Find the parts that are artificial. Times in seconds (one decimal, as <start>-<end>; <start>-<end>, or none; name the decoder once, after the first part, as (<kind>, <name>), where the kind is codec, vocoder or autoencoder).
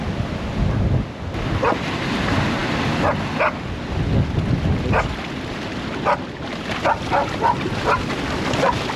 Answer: none